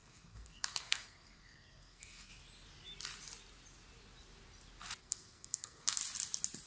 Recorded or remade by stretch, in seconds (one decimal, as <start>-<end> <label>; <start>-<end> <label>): 0.0-2.3 remade; 2.3-5.0 recorded; 5.0-6.0 remade; 6.0-6.7 recorded